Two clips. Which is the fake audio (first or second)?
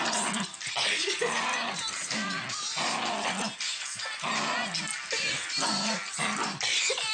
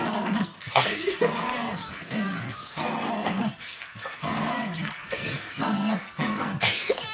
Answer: second